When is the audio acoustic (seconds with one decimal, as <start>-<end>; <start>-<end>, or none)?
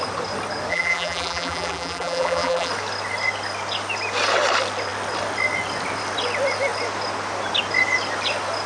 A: 0.0-0.7; 2.7-8.7